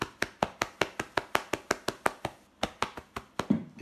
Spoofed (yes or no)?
no